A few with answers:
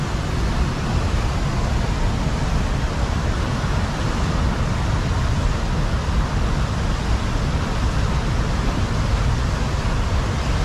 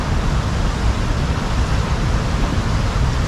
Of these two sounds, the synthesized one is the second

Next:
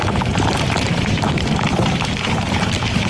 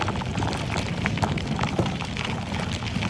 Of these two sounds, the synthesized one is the first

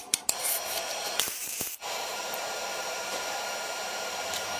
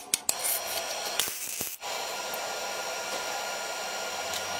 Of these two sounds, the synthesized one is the first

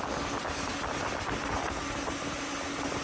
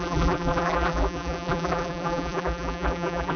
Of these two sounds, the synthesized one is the second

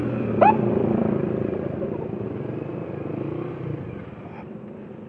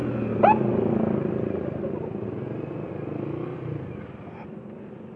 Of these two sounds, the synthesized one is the first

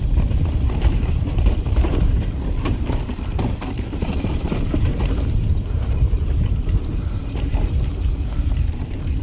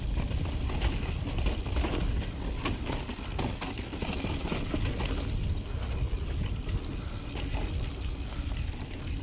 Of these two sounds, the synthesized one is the first